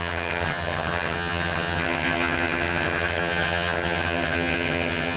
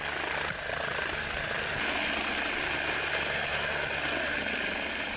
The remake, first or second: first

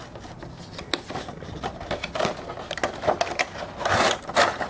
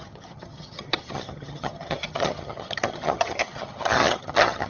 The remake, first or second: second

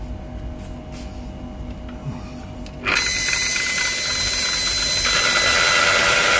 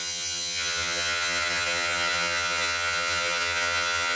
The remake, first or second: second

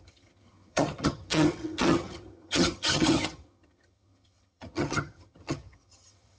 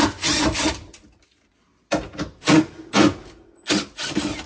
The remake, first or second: first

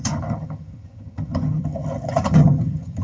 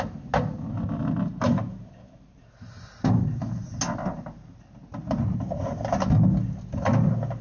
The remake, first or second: first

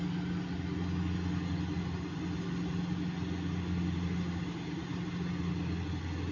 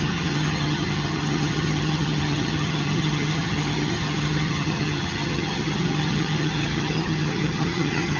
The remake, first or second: second